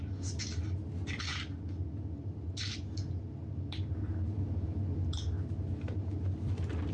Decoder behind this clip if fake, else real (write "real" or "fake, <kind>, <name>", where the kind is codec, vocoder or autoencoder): real